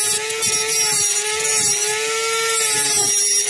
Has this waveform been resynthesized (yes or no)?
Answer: no